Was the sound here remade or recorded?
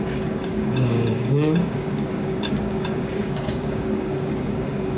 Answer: remade